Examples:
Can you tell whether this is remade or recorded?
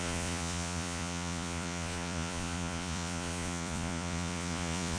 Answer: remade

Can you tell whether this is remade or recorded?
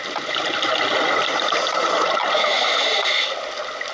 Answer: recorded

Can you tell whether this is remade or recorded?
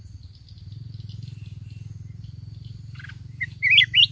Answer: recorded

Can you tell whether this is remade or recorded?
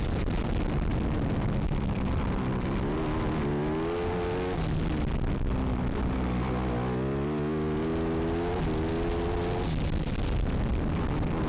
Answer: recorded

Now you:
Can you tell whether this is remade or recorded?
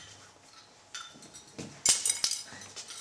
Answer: recorded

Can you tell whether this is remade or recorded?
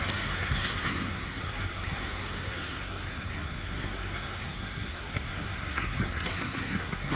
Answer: remade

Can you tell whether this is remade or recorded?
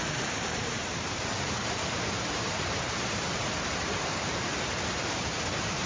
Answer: remade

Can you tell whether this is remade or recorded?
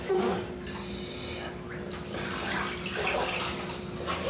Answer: recorded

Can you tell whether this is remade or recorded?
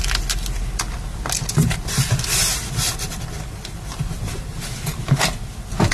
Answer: recorded